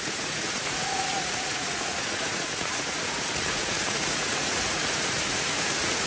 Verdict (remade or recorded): remade